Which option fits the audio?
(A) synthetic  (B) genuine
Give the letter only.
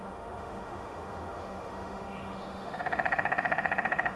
A